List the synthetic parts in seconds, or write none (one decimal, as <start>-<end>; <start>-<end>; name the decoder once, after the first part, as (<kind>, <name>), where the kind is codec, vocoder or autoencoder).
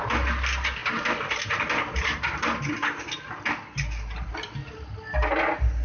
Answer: none